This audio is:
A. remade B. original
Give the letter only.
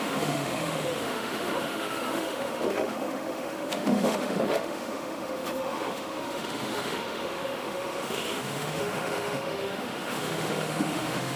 A